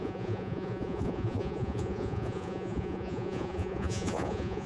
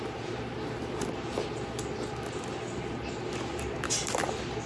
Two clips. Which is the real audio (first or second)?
second